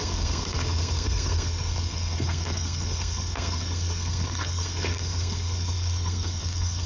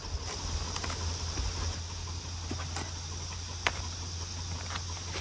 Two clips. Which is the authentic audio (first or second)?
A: second